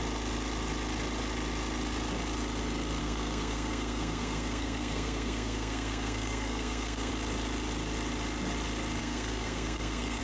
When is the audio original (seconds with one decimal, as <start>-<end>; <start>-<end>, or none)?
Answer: 0.0-3.0; 7.1-9.0